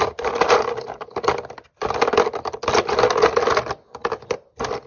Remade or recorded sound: recorded